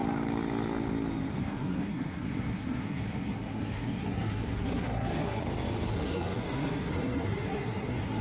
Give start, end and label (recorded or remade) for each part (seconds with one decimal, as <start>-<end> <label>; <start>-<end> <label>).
0.0-1.4 recorded; 1.4-5.4 remade; 5.4-5.9 recorded; 5.9-8.2 remade